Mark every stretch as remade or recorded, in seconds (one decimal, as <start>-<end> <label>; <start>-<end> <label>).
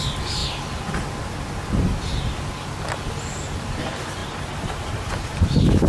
0.0-5.9 recorded